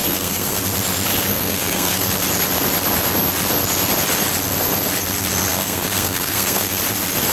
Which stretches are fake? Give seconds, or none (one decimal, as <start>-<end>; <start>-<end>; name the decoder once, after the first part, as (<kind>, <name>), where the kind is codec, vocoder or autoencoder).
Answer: 0.0-0.6 (codec, SNAC); 1.3-2.1; 5.5-6.8